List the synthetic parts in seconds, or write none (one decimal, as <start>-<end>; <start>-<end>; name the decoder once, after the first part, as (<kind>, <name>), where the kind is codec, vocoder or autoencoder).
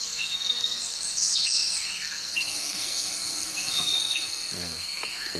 0.0-5.4 (codec, SNAC)